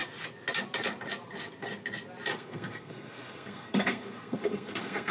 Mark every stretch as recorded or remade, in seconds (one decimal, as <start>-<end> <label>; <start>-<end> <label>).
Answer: 0.0-2.3 recorded; 2.3-5.1 remade